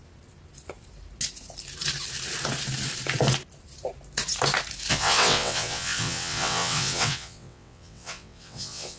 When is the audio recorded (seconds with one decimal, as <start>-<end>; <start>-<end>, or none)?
0.0-4.9

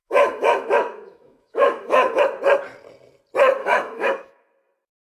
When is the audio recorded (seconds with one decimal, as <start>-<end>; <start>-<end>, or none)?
2.2-3.6; 4.5-5.1

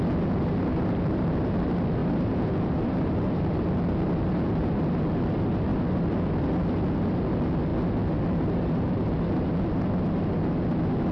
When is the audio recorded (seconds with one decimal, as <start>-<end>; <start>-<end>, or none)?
0.0-2.0; 2.7-5.7; 6.3-11.1

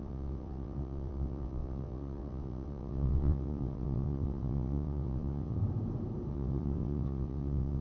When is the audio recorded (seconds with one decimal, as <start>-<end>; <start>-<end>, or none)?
5.6-6.3

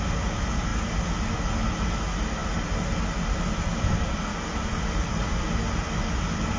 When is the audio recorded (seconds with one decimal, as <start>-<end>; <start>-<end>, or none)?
0.0-2.4; 3.5-4.3; 5.5-6.6

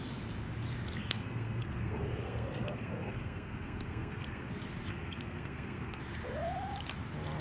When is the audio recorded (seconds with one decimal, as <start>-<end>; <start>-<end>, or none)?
0.0-1.0; 4.5-4.9; 6.0-7.4

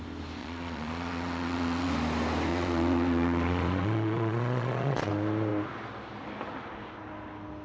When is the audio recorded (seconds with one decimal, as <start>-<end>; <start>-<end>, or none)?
0.0-0.4; 1.9-2.5; 5.1-7.6